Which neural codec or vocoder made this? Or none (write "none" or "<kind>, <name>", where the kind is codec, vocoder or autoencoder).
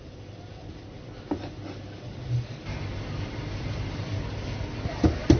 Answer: none